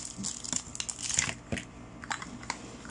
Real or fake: real